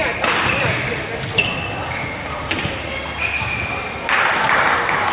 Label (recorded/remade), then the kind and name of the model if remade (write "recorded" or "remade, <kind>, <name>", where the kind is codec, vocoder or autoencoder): recorded